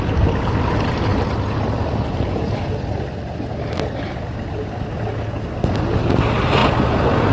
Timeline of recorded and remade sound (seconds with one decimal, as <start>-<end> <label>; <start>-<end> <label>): 0.0-7.3 recorded